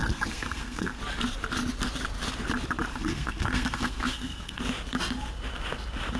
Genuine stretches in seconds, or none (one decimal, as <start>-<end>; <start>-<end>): 1.0-2.9; 4.6-6.2